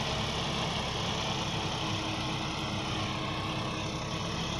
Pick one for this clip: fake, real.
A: real